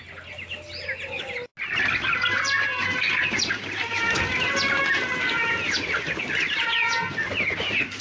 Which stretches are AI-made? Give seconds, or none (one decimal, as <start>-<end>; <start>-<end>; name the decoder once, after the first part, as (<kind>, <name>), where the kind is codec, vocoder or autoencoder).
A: 2.2-4.2 (vocoder, BigVGAN v2)